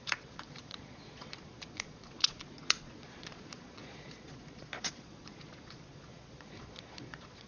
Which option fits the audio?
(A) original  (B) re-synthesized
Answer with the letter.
B